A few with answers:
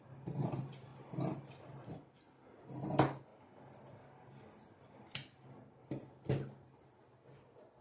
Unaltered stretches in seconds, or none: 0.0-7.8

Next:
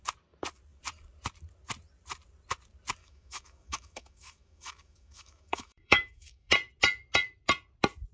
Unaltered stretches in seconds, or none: 0.0-3.0; 6.5-8.1